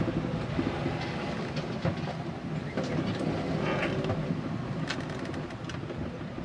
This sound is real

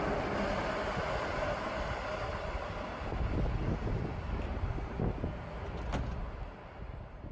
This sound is real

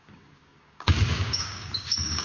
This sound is fake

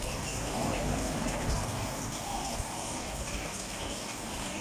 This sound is fake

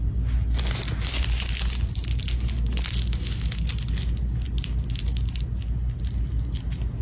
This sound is real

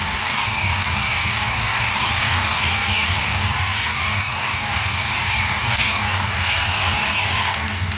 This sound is fake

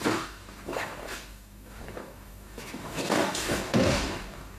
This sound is fake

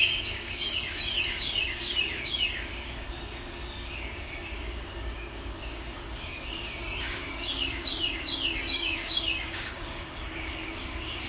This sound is fake